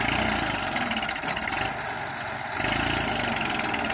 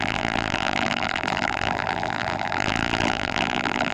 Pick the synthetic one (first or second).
second